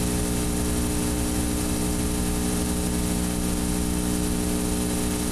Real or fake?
real